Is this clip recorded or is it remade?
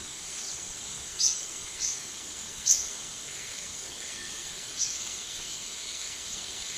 remade